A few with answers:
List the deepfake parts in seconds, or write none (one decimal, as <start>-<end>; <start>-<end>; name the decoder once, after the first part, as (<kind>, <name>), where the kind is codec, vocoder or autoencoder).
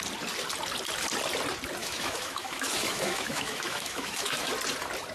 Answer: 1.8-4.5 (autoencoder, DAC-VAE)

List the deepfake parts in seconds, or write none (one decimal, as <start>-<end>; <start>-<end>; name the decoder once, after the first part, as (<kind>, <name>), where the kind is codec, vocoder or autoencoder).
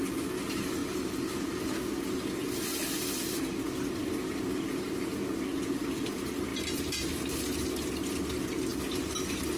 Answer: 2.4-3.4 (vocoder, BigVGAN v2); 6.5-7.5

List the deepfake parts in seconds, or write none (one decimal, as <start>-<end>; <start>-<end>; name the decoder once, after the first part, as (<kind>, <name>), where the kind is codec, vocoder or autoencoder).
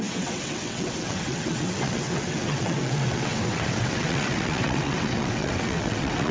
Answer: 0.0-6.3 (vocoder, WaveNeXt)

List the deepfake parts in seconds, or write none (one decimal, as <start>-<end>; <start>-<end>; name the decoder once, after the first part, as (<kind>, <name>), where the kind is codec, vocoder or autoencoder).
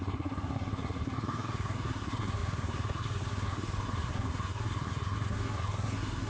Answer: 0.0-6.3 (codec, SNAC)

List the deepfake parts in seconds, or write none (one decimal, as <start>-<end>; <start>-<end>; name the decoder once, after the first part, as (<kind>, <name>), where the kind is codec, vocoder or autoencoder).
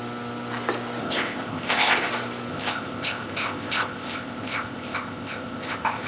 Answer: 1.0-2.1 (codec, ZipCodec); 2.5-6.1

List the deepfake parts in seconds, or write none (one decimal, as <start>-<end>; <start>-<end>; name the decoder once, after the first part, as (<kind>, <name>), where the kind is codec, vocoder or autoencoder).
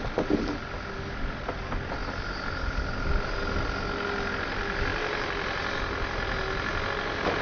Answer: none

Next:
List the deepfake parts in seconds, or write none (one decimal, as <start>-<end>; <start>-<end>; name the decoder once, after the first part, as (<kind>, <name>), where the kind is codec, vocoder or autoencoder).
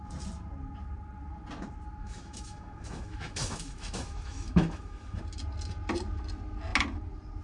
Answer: 2.0-5.2 (autoencoder, DAC-VAE)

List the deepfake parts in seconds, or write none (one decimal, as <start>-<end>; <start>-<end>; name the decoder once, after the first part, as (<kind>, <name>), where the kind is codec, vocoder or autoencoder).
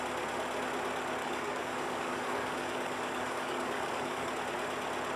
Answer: 1.2-4.3 (codec, DAC)